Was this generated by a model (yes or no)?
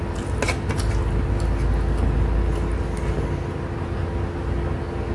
no